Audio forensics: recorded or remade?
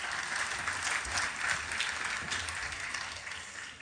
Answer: recorded